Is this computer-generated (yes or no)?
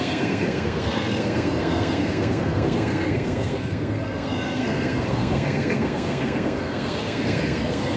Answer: yes